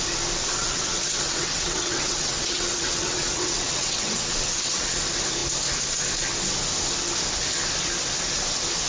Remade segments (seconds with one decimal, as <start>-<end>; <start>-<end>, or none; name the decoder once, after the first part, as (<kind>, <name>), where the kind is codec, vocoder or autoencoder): 0.6-5.0 (vocoder, WaveNeXt)